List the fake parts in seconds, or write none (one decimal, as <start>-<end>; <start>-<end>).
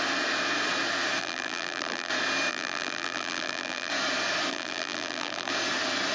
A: 1.2-2.1; 2.5-3.9; 4.5-5.5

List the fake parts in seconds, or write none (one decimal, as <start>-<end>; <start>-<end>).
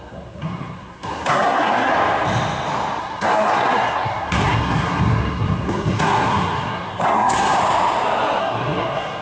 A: 0.0-1.9; 3.0-7.6; 8.4-9.2